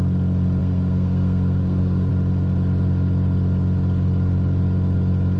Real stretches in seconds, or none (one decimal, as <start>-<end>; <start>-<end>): 0.0-0.6; 2.1-5.4

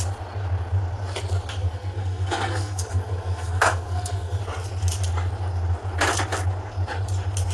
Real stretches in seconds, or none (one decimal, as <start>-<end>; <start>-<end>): 0.0-1.6; 4.4-7.5

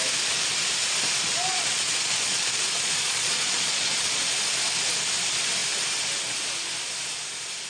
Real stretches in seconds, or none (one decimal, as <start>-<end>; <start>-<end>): 0.0-1.5; 4.2-7.7

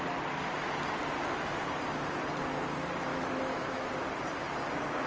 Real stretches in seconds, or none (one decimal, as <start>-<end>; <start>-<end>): 0.0-3.1; 3.9-5.1

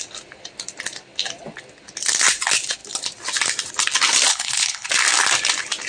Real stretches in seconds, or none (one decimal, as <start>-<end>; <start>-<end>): 0.0-4.3; 4.9-5.9